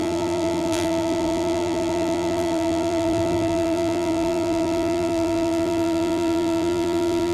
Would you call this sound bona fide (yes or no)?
no